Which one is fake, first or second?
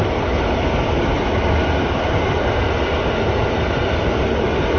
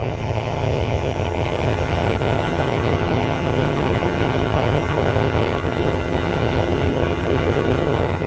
second